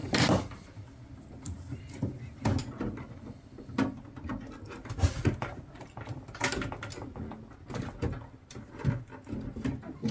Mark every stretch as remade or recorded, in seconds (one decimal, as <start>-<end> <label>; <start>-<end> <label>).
0.0-10.1 recorded